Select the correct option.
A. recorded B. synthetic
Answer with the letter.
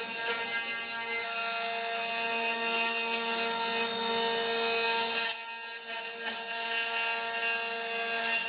A